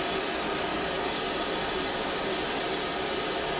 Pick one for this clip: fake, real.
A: real